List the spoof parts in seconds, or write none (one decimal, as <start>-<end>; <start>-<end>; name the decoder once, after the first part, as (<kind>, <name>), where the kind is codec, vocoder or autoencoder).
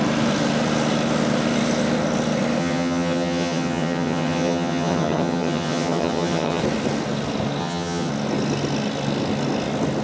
2.6-6.6 (vocoder, HiFi-GAN); 7.6-8.1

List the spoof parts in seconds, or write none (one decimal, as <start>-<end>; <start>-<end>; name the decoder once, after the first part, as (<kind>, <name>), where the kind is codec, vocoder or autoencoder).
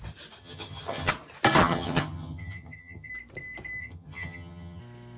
0.4-1.1 (vocoder, HiFi-GAN); 1.6-3.1; 3.8-4.8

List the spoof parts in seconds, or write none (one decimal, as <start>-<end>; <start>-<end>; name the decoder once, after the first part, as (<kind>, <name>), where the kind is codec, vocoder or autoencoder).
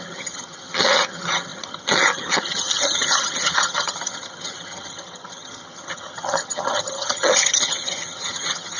0.0-8.8 (vocoder, HiFi-GAN)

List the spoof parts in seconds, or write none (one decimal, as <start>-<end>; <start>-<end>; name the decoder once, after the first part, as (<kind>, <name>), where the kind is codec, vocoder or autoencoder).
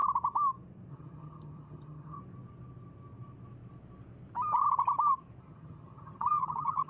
0.9-2.2 (vocoder, HiFi-GAN); 5.4-6.9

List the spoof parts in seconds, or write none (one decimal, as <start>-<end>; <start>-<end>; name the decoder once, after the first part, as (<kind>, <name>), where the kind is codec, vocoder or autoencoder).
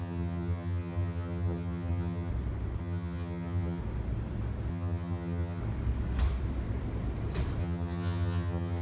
0.0-2.3 (vocoder, HiFi-GAN); 2.8-3.8; 4.7-5.6; 7.6-8.8